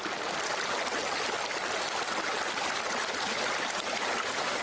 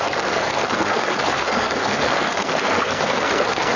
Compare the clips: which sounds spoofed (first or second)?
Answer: second